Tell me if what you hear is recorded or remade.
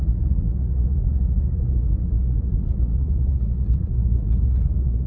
remade